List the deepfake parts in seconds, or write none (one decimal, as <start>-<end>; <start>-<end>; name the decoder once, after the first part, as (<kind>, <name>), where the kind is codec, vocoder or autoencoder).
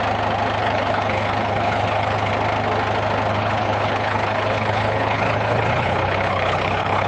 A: 0.6-2.3 (codec, HILCodec); 3.3-7.1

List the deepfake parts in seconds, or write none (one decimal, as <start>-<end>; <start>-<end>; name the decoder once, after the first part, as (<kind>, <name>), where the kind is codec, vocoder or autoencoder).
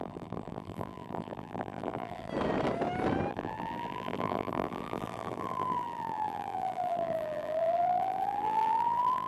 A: 0.0-2.3 (vocoder, BigVGAN v2); 3.3-9.3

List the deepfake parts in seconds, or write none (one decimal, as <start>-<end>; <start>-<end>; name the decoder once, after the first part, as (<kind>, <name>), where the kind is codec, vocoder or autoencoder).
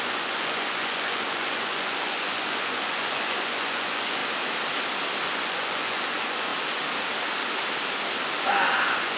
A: 0.0-4.2 (vocoder, Vocos); 5.2-6.5; 8.4-9.2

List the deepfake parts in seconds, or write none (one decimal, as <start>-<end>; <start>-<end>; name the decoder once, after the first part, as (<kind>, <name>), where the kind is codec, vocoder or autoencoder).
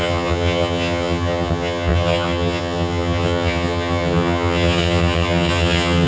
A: 0.0-6.1 (vocoder, HiFi-GAN)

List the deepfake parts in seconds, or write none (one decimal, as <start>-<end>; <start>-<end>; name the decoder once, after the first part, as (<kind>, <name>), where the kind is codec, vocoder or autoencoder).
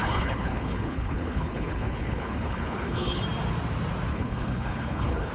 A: 0.0-3.2 (codec, HILCodec); 4.1-5.3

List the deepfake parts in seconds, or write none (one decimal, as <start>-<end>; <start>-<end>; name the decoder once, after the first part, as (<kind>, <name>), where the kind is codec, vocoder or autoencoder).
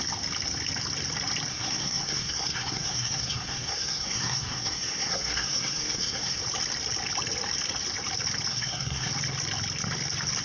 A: 1.5-6.4 (codec, SNAC); 8.5-9.1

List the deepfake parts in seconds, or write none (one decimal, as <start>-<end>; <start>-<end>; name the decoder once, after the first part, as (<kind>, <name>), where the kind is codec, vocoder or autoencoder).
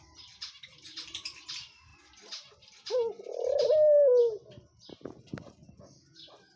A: none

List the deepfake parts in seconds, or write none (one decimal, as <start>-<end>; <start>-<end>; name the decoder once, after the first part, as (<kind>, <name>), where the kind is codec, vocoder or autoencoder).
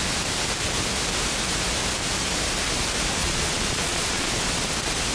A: 3.2-4.3 (vocoder, Vocos)